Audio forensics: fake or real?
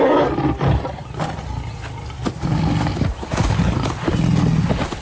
real